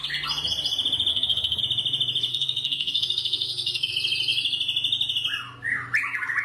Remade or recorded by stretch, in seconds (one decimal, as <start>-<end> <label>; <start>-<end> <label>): 0.0-1.1 recorded; 1.1-1.6 remade; 1.6-2.3 recorded; 2.3-3.9 remade; 3.9-6.4 recorded